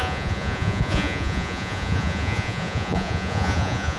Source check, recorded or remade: remade